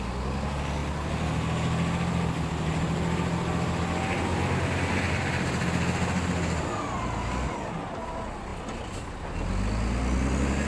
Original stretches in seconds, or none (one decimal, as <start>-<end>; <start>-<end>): 0.0-10.7